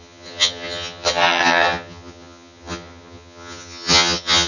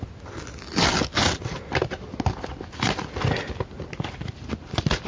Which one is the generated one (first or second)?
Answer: first